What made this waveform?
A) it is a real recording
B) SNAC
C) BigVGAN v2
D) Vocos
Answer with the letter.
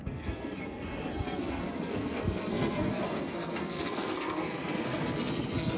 B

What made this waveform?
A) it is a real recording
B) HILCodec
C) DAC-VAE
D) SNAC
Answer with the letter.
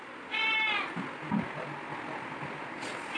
A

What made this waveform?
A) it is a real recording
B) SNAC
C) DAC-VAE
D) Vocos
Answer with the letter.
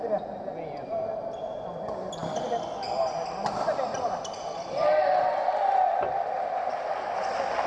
A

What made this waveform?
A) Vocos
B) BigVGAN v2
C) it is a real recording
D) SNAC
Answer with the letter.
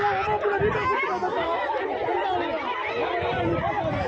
C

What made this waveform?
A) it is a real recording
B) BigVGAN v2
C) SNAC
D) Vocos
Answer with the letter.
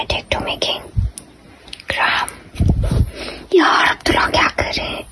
A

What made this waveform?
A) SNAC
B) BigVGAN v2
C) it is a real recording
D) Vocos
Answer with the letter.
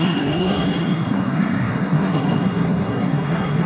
A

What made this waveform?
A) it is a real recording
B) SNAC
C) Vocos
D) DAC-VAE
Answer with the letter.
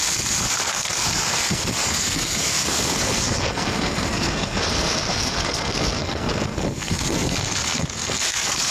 B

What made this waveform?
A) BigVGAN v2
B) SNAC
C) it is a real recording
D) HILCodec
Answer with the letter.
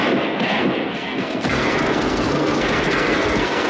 B